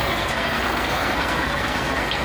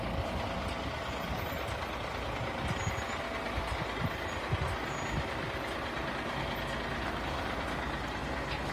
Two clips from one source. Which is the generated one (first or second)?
first